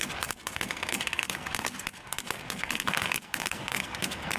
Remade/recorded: remade